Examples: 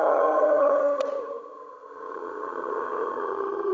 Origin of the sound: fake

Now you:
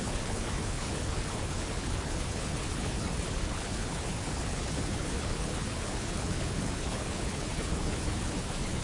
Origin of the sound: fake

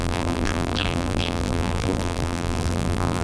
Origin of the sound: fake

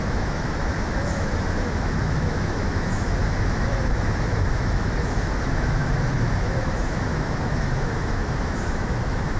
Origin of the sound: fake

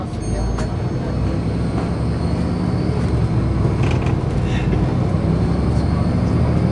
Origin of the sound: real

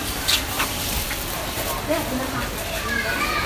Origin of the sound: real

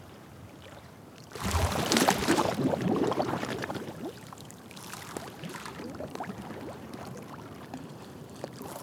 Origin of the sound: fake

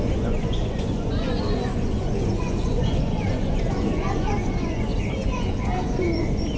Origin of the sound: fake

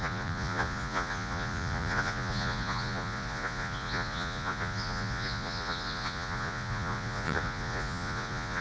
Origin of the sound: fake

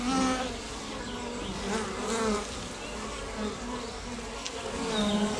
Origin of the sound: real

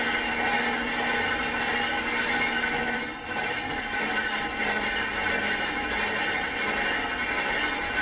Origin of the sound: real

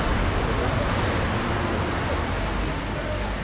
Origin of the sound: real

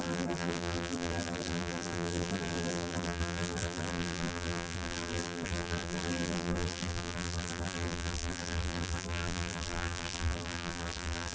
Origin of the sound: fake